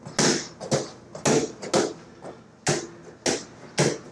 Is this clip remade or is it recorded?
recorded